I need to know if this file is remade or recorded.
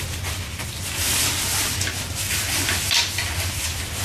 recorded